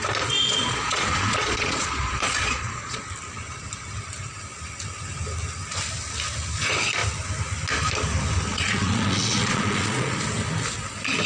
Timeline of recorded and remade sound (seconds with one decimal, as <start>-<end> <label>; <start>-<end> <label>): 0.0-0.4 recorded; 0.4-3.0 remade; 3.0-8.5 recorded; 8.5-10.2 remade; 10.2-11.3 recorded